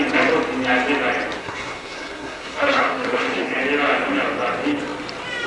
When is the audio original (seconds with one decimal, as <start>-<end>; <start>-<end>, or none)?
0.0-1.4; 3.6-5.5